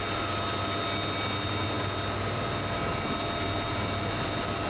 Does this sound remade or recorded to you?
recorded